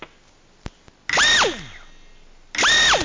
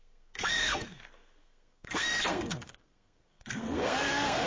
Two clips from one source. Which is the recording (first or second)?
first